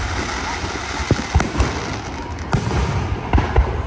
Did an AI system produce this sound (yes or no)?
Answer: no